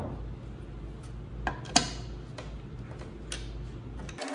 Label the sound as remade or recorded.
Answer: recorded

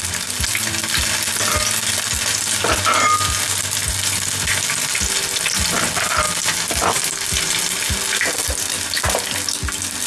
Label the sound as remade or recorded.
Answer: recorded